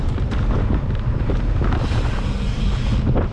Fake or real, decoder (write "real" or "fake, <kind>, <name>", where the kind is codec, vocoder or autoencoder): real